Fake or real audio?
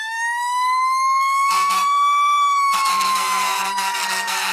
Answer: fake